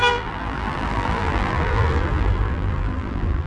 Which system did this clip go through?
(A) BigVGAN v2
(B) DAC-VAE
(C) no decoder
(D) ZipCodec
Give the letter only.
A